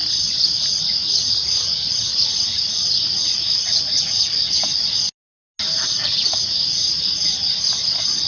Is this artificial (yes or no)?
no